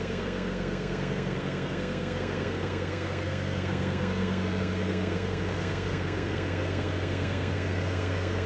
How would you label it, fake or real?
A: fake